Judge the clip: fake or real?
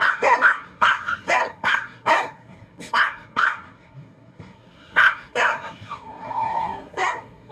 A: fake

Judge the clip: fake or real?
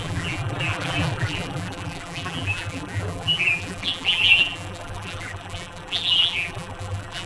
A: fake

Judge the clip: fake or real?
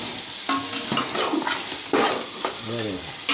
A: real